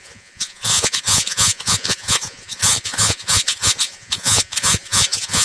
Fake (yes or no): yes